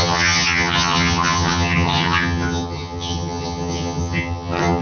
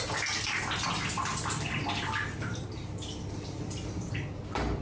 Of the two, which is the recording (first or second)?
second